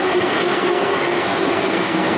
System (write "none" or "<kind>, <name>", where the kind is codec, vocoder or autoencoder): codec, SNAC